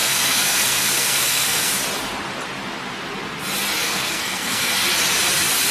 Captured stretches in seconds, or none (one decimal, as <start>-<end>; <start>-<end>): 1.7-3.8; 4.7-5.7